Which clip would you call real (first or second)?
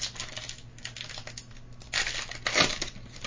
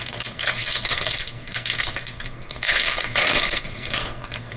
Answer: first